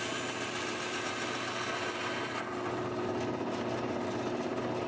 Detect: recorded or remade recorded